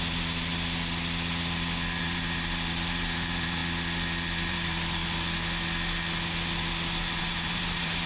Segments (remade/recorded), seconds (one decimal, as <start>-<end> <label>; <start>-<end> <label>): 0.0-0.5 remade; 0.5-2.0 recorded; 2.0-3.6 remade; 3.6-4.5 recorded; 4.5-5.0 remade; 5.0-7.2 recorded; 7.2-8.1 remade